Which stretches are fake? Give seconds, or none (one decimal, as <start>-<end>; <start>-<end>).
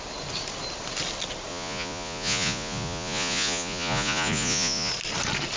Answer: 1.5-4.9